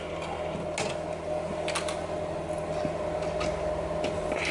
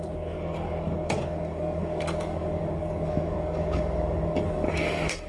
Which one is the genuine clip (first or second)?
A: first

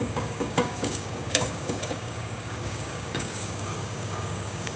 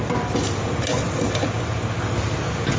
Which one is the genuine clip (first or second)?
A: second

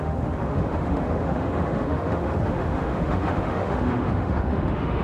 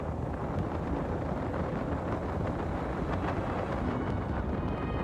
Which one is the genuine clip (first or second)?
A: second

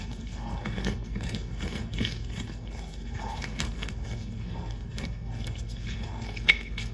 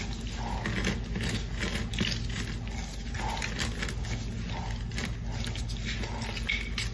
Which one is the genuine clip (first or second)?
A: second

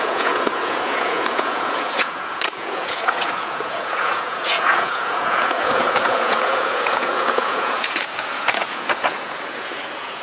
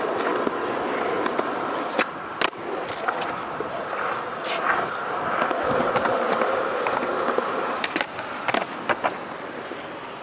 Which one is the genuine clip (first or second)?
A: second